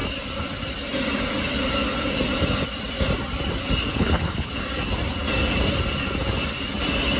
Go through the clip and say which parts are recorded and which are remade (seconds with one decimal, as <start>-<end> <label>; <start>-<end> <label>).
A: 0.0-3.9 recorded; 3.9-4.5 remade; 4.5-7.2 recorded